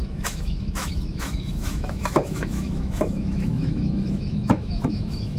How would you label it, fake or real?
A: fake